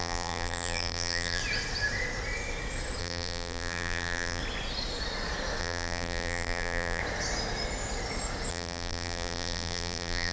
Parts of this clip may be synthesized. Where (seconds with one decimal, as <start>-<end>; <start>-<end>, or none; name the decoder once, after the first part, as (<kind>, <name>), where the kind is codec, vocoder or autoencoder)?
0.0-1.4 (vocoder, BigVGAN v2); 3.0-4.4; 5.6-7.0; 8.5-10.3